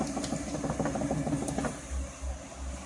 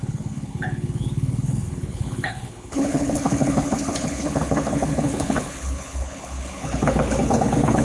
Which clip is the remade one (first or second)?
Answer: second